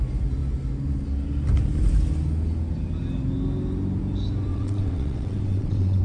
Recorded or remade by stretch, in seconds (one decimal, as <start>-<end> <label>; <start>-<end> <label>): 0.0-4.5 recorded; 4.5-6.0 remade